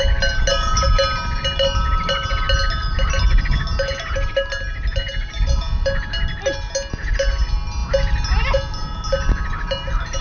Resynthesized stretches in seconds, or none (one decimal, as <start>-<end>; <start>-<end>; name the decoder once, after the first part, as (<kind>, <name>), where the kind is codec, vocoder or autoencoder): none